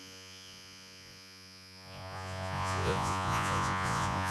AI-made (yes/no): yes